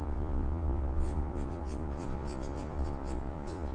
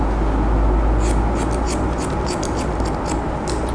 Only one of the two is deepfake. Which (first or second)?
first